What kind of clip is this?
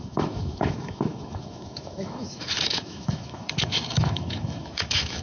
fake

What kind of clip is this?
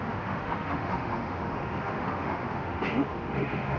fake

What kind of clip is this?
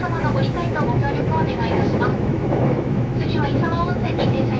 fake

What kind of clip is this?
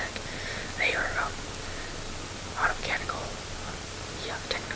real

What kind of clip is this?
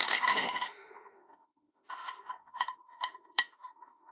fake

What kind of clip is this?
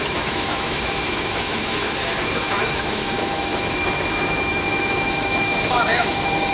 fake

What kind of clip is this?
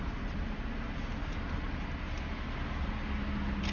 real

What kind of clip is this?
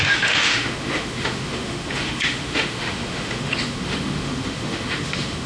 fake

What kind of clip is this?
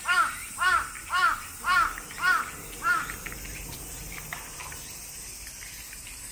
real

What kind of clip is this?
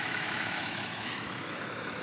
fake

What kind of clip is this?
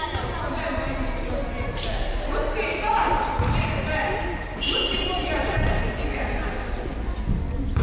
real